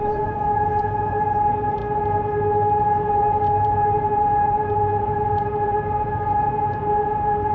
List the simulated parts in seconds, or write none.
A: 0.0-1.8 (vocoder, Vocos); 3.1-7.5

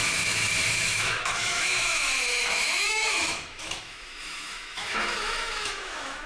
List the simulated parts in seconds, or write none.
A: 0.0-6.3 (autoencoder, DAC-VAE)

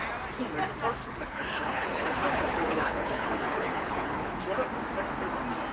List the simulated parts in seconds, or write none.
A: 1.0-4.4 (codec, HILCodec)

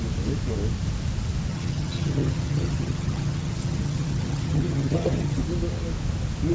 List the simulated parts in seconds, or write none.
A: 1.5-5.4 (vocoder, HiFi-GAN)

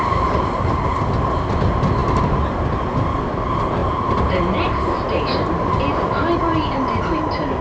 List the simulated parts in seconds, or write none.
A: none

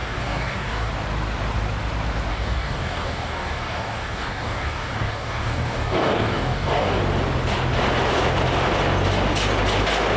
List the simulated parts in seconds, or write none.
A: 0.0-0.9 (codec, DAC); 2.3-7.0

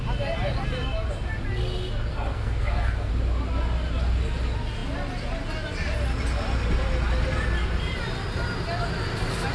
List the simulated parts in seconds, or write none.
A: 2.1-3.1 (codec, SNAC)

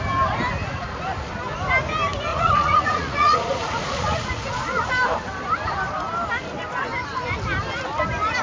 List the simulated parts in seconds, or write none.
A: 2.3-4.9 (vocoder, Vocos)